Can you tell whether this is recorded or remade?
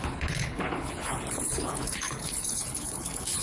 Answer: remade